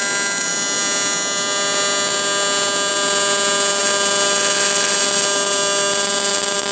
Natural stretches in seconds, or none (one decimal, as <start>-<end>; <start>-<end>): 0.0-6.7